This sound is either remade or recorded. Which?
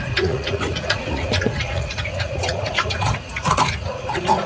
remade